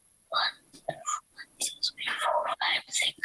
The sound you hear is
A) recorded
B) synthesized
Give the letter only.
B